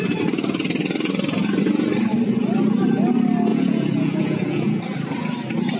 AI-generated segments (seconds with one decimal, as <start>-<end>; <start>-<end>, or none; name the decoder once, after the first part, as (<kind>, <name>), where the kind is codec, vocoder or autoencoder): 3.5-4.8 (vocoder, Vocos)